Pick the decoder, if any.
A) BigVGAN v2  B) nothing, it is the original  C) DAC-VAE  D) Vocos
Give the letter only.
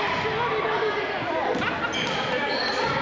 B